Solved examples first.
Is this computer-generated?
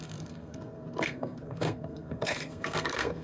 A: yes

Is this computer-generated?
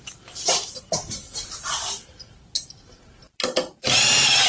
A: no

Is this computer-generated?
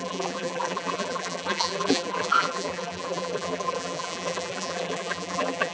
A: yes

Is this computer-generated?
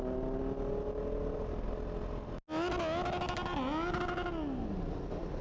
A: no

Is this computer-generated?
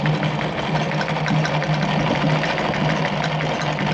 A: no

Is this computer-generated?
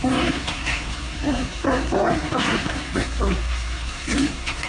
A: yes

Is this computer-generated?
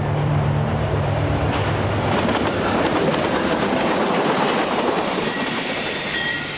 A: yes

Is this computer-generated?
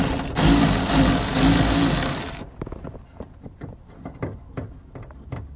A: no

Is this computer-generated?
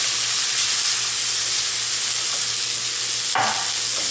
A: no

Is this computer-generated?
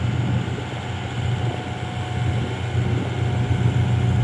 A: no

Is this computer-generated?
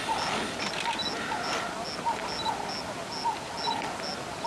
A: no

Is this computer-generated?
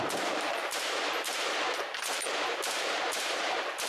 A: yes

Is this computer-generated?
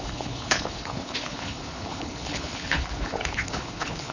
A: yes